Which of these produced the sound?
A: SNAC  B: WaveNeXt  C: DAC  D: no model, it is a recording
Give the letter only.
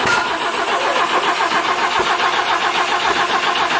D